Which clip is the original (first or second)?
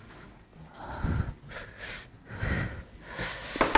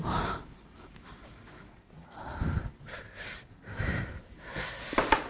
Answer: first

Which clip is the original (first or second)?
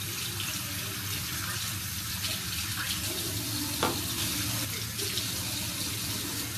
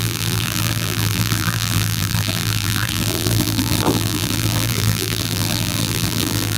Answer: first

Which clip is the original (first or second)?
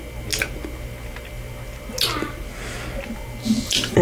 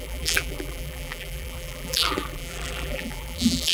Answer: first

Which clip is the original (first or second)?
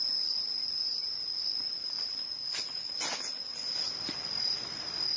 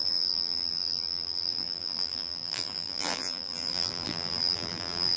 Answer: first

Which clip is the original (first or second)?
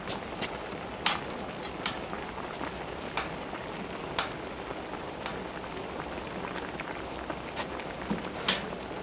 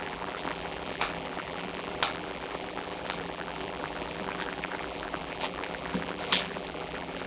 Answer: first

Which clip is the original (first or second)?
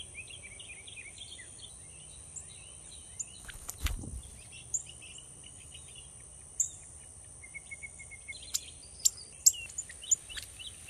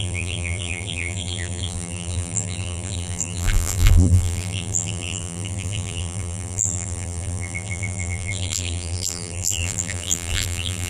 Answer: first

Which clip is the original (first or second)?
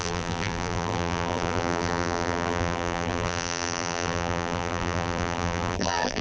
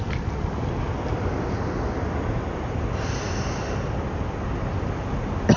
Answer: second